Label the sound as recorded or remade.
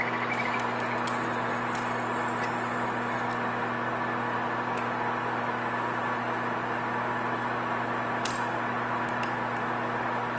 recorded